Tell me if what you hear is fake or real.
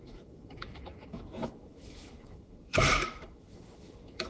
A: fake